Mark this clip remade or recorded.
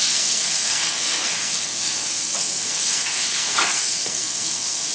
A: remade